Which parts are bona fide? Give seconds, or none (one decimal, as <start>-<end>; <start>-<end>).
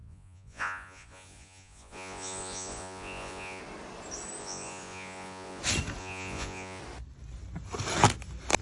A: 3.6-4.4; 5.6-6.0; 6.8-8.6